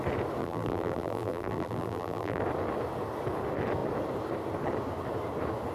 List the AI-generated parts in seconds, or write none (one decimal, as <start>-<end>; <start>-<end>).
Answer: 0.4-2.4